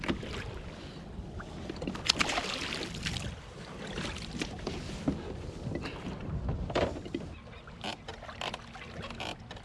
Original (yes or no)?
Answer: yes